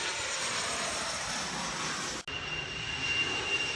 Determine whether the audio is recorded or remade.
recorded